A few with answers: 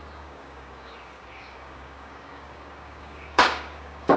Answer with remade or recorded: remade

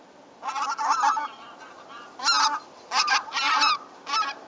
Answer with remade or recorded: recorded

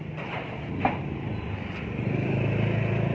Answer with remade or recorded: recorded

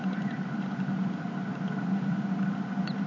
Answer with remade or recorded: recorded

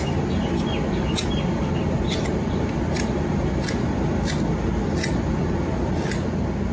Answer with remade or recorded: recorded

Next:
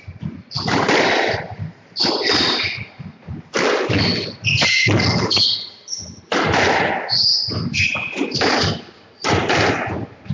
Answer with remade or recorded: recorded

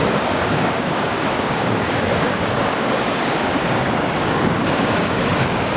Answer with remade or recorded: remade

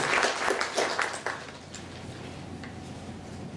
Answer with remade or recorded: recorded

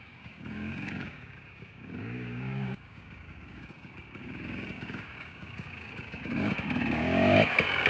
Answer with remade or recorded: remade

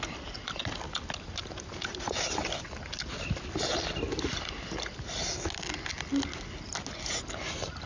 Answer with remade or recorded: recorded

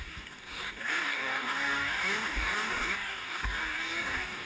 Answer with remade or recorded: remade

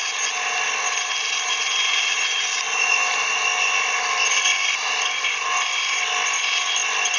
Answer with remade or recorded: recorded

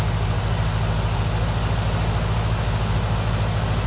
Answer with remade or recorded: recorded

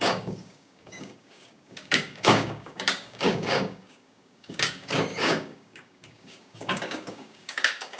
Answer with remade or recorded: remade